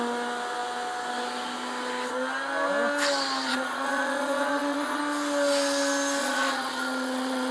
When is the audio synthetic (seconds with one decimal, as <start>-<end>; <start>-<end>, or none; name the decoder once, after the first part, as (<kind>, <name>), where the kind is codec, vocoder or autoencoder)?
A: 3.5-5.0 (vocoder, Vocos); 6.2-7.5